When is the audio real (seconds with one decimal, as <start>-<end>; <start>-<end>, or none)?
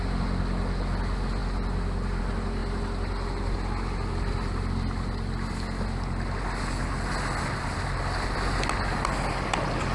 0.0-9.9